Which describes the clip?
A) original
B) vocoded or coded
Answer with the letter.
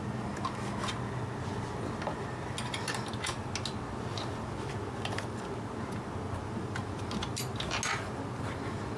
A